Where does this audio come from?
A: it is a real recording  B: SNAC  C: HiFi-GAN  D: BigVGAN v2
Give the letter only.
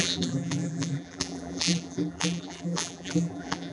D